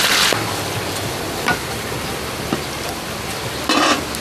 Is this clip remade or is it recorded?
recorded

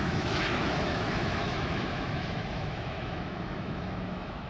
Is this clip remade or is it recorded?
remade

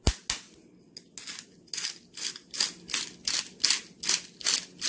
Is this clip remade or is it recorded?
recorded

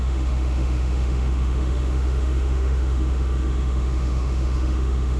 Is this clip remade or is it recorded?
remade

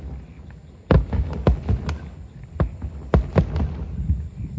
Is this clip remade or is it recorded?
recorded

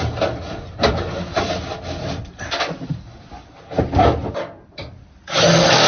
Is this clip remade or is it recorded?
recorded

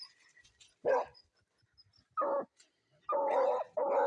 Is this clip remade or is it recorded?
recorded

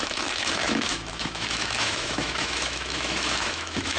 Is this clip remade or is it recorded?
remade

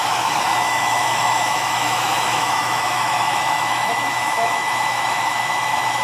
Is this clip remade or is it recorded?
remade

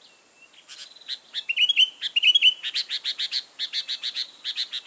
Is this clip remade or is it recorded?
recorded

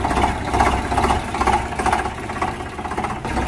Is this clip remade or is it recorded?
recorded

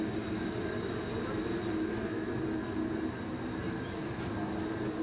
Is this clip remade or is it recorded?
recorded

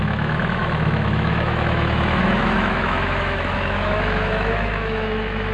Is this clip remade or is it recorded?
remade